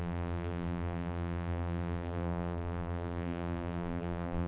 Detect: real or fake fake